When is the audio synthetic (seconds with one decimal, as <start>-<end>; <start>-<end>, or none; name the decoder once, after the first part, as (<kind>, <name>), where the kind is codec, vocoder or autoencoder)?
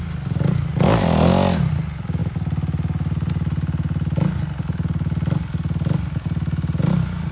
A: none